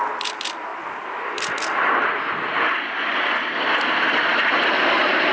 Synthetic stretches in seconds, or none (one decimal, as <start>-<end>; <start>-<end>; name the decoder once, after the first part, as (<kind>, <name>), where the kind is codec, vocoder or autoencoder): none